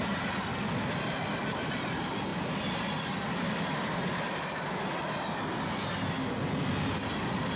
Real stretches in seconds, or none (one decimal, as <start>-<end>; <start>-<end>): 0.0-7.6